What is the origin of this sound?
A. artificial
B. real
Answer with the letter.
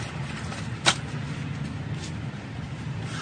B